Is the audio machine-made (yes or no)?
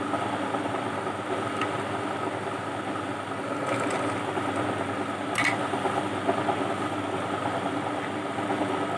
no